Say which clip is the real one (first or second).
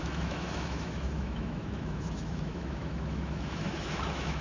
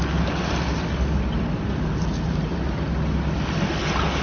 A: second